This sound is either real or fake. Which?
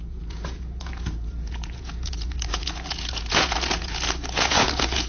fake